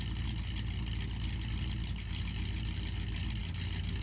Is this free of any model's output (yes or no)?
yes